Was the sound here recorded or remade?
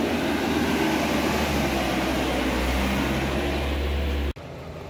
recorded